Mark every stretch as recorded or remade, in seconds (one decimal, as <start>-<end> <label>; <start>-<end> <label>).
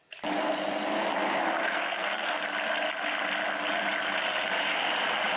0.0-1.6 recorded; 1.6-2.4 remade; 2.4-5.4 recorded